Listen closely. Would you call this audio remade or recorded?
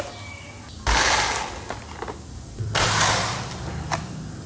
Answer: recorded